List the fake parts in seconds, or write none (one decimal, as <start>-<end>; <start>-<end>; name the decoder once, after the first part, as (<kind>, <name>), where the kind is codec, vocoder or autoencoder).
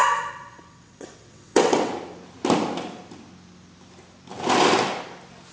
0.0-1.9 (vocoder, WaveNeXt)